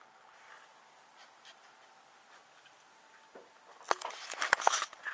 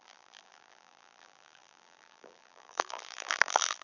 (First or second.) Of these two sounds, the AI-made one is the second